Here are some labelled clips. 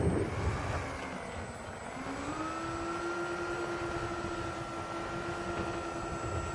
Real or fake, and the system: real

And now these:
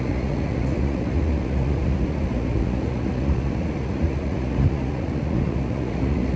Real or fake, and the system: fake, vocoder, Vocos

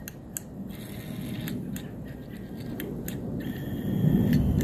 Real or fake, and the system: real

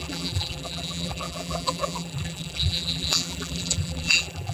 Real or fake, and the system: fake, vocoder, BigVGAN v2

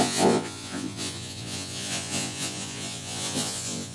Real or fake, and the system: fake, vocoder, Vocos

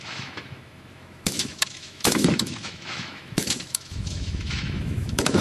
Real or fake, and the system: fake, autoencoder, DAC-VAE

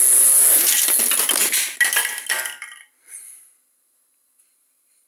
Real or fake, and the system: real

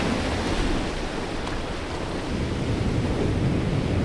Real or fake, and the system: real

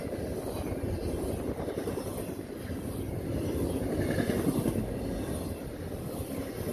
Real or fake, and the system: real